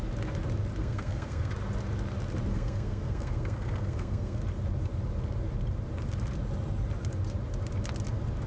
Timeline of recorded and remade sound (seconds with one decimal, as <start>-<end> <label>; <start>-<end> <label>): 0.0-0.8 recorded; 0.8-1.5 remade; 1.5-2.5 recorded; 2.5-4.4 remade; 4.4-8.5 recorded